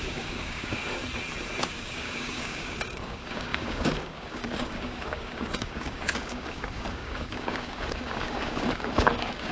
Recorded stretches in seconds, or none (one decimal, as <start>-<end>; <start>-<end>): 0.8-1.6